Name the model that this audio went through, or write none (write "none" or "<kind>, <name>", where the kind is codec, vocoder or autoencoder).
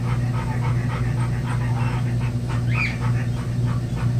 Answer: none